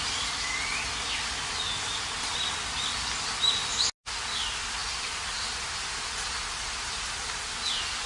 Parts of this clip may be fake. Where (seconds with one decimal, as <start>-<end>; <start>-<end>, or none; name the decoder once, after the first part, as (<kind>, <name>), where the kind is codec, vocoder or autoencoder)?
none